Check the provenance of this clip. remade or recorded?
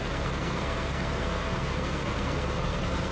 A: remade